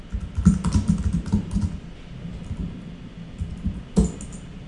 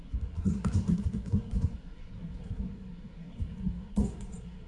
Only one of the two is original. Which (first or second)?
first